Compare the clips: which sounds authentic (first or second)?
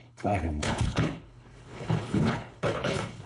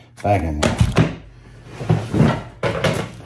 second